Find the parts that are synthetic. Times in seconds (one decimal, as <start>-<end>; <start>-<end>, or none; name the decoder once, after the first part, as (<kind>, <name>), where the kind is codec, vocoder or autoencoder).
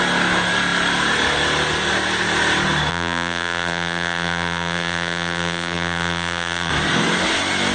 2.9-6.7 (vocoder, BigVGAN v2)